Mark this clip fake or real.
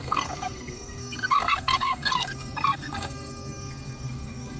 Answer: fake